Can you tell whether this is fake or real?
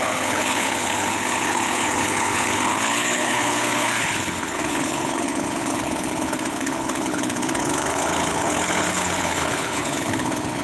fake